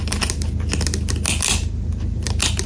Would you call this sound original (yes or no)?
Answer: yes